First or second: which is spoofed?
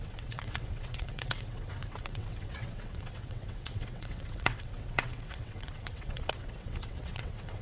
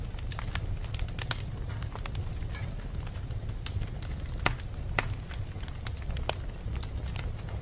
first